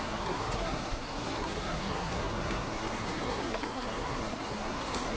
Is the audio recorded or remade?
remade